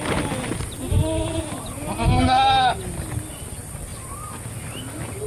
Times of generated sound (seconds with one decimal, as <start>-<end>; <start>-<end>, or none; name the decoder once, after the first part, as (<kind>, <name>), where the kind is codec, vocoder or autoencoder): none